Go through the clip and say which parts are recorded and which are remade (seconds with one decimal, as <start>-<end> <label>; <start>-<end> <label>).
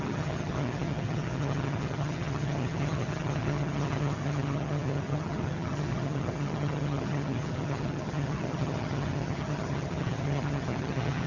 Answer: 0.0-11.3 remade